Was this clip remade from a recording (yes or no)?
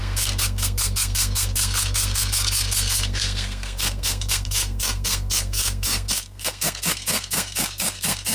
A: yes